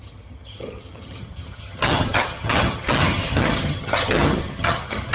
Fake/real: fake